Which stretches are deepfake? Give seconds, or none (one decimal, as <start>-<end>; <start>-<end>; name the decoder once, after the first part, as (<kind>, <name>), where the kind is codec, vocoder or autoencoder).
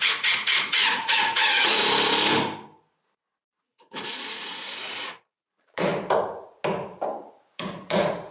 0.0-1.8 (vocoder, Vocos); 3.6-5.9; 7.2-8.3